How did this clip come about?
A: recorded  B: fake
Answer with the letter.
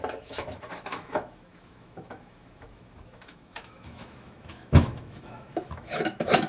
B